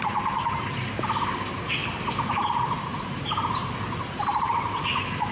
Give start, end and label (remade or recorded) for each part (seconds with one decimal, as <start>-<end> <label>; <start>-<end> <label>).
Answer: 0.0-1.8 recorded; 1.8-2.5 remade; 2.5-2.9 recorded; 2.9-4.7 remade; 4.7-5.3 recorded